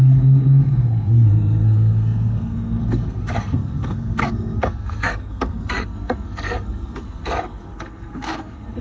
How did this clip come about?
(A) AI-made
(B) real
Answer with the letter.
A